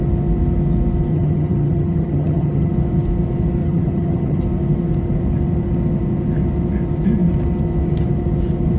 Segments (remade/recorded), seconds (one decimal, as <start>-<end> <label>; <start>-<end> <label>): 0.0-1.1 recorded; 1.1-2.7 remade; 2.7-3.6 recorded; 3.6-4.4 remade; 4.4-8.8 recorded